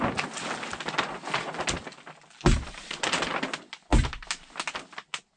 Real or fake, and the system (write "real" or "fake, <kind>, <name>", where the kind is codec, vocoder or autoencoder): real